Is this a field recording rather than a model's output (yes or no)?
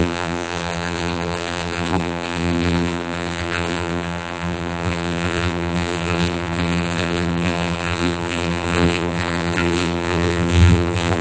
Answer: no